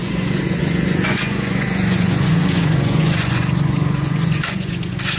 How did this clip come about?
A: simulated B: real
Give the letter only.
A